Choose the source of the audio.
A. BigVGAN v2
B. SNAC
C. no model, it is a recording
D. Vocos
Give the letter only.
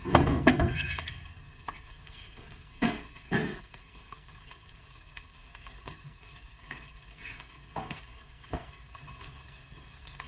B